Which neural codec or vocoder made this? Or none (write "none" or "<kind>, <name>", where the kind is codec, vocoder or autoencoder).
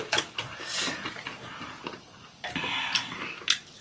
vocoder, BigVGAN v2